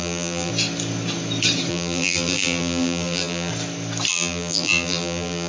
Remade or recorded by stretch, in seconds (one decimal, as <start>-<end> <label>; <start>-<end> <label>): 0.0-0.5 remade; 0.5-1.7 recorded; 1.7-3.5 remade; 3.5-4.1 recorded; 4.1-5.5 remade